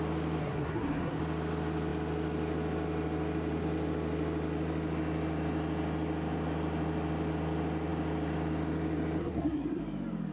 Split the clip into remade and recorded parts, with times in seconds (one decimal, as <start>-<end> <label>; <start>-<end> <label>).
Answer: 0.0-0.4 recorded; 0.4-1.2 remade; 1.2-9.2 recorded; 9.2-9.8 remade; 9.8-10.3 recorded